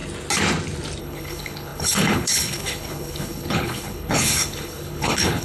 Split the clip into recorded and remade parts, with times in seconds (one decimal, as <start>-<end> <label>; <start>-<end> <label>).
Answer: 0.0-1.0 recorded; 1.0-5.4 remade